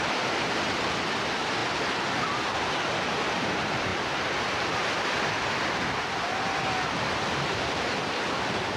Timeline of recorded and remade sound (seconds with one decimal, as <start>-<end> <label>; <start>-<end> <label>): 0.0-1.6 remade; 1.6-2.1 recorded; 2.1-3.9 remade; 3.9-7.3 recorded; 7.3-8.8 remade